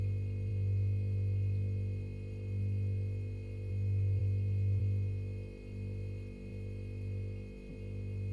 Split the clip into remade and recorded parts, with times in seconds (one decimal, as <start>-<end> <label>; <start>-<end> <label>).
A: 0.0-8.3 recorded

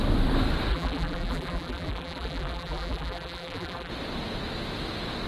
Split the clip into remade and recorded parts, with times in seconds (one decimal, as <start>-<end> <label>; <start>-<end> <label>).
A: 0.0-0.7 recorded; 0.7-3.9 remade; 3.9-5.3 recorded

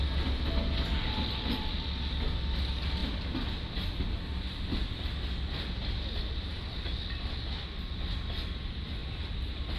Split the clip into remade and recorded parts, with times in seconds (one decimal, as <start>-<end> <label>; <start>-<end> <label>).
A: 0.0-3.0 recorded; 3.0-7.3 remade; 7.3-9.0 recorded; 9.0-9.8 remade

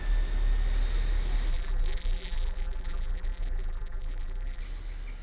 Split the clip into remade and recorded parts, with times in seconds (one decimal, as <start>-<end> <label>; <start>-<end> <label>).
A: 0.0-1.5 recorded; 1.5-4.6 remade; 4.6-5.2 recorded

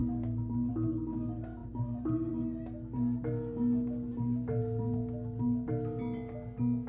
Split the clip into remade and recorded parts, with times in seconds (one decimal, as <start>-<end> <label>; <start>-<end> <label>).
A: 0.0-1.6 recorded; 1.6-2.3 remade; 2.3-6.9 recorded